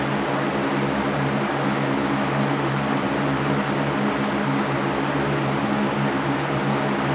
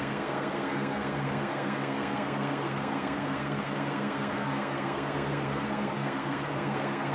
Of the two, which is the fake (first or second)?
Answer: second